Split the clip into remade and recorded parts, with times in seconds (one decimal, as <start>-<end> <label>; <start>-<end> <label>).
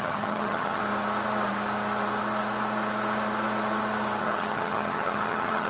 0.0-0.8 remade; 0.8-4.2 recorded; 4.2-5.7 remade